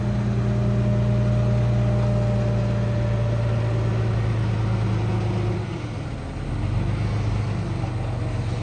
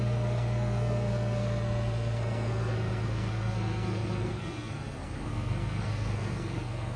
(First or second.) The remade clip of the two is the second